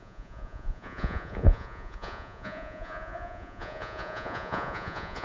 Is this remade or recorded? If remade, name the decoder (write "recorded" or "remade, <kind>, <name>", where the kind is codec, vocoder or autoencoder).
remade, vocoder, Vocos